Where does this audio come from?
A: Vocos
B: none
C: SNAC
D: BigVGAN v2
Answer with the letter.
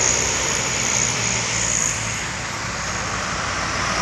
D